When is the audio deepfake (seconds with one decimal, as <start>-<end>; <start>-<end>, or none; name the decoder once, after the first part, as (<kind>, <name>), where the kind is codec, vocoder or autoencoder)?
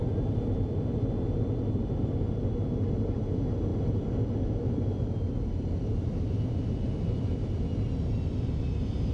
none